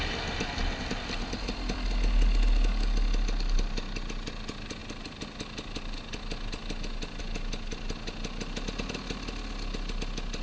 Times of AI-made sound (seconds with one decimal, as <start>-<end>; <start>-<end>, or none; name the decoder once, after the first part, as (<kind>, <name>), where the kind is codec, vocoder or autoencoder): none